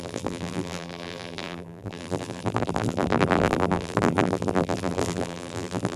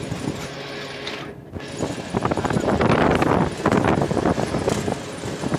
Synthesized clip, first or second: first